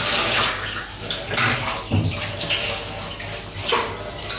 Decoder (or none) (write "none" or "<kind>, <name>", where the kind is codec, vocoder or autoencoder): none